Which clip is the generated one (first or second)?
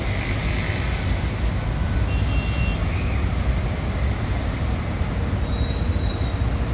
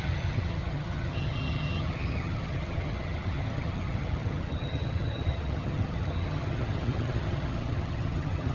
second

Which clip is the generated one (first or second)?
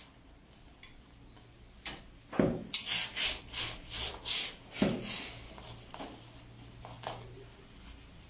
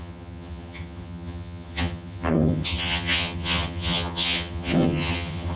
second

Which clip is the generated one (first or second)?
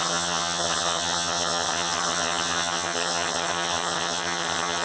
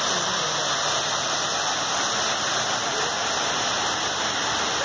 first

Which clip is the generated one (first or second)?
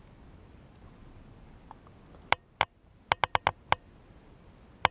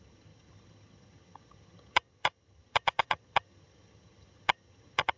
second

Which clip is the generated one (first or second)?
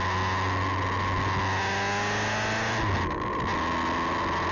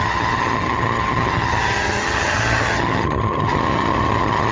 second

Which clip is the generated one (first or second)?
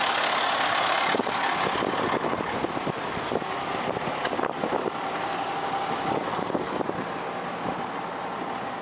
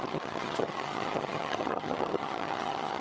second